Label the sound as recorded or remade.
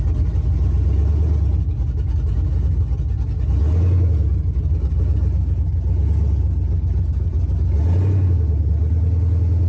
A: recorded